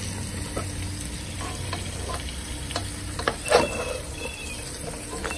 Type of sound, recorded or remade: recorded